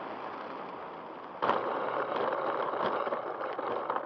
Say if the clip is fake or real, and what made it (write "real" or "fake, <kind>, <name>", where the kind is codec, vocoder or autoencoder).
real